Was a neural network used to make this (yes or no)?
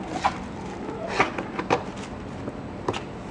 no